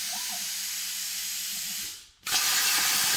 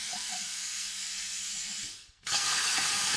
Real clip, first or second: first